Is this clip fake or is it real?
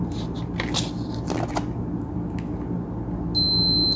real